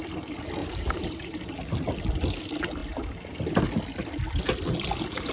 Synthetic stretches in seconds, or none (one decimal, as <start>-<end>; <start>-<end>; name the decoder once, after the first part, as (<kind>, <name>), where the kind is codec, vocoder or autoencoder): 0.6-2.0 (vocoder, BigVGAN v2)